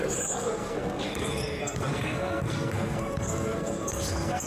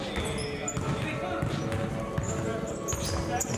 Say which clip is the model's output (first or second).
first